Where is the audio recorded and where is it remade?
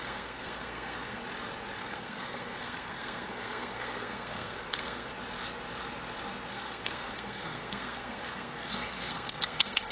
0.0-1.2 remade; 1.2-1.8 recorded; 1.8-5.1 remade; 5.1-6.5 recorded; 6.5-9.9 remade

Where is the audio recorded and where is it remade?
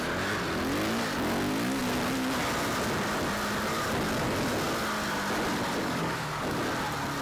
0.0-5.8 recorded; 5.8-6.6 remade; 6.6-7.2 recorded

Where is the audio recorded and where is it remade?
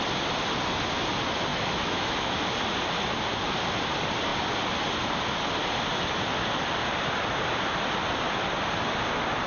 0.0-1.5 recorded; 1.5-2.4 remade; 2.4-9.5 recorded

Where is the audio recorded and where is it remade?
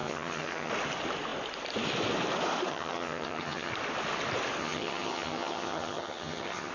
0.0-0.7 remade; 0.7-2.7 recorded; 2.7-3.7 remade; 3.7-4.6 recorded; 4.6-6.7 remade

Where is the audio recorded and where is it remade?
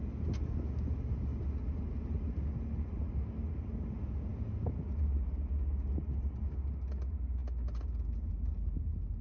0.0-9.2 recorded